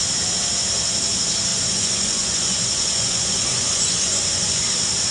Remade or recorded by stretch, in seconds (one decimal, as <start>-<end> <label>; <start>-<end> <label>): 0.0-1.5 recorded; 1.5-4.6 remade; 4.6-5.1 recorded